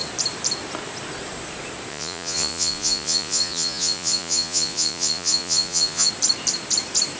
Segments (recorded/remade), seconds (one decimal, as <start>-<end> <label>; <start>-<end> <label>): 0.0-1.9 recorded; 1.9-6.1 remade; 6.1-7.2 recorded